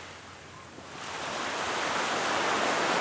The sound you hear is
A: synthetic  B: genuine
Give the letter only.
B